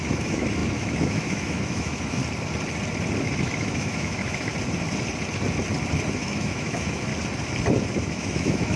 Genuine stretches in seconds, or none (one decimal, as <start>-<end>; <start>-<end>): 2.2-3.2; 4.5-6.2; 7.1-7.8